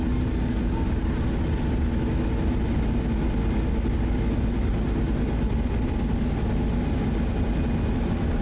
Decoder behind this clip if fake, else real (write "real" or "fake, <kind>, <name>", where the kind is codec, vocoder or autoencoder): real